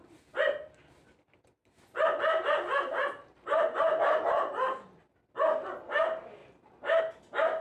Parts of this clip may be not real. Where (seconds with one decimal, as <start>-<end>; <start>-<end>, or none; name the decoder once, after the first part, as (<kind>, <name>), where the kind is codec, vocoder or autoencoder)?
1.6-4.2 (vocoder, BigVGAN v2); 6.4-7.0